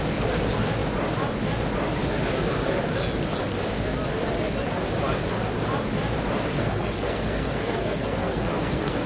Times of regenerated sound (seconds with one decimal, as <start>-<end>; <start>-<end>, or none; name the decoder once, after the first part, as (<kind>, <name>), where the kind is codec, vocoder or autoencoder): 6.6-9.1 (codec, SNAC)